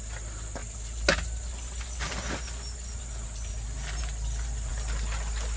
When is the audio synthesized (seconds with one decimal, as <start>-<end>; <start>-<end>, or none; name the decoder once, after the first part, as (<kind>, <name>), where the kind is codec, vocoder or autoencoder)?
none